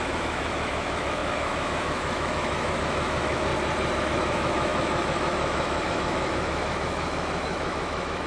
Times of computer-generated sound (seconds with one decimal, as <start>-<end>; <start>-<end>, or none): 0.0-3.5; 4.0-8.3

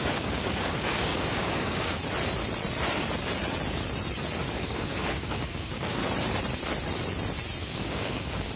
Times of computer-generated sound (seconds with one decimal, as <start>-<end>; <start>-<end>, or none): 0.0-2.0; 4.4-6.0; 7.6-8.6

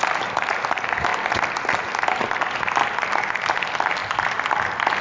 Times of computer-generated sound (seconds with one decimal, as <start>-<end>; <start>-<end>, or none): none